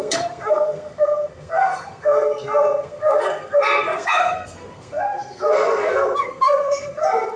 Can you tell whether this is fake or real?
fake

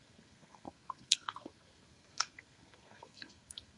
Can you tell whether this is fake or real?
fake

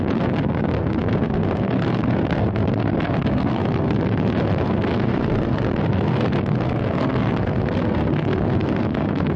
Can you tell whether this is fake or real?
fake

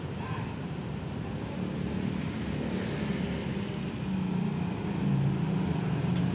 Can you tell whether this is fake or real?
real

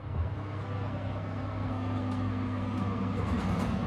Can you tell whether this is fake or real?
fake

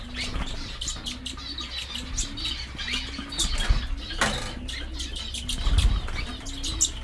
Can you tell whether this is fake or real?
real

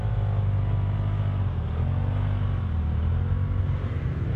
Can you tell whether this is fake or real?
real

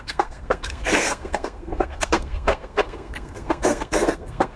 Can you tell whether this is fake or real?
fake